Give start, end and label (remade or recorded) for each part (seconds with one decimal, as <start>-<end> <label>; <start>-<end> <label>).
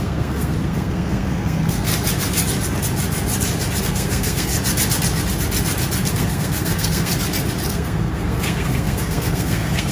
0.0-1.9 remade; 1.9-3.8 recorded; 3.8-4.5 remade; 4.5-6.1 recorded; 6.1-7.1 remade; 7.1-7.7 recorded; 7.7-9.9 remade